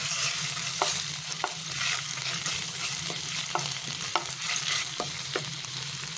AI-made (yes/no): no